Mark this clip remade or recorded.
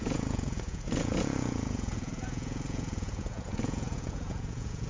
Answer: remade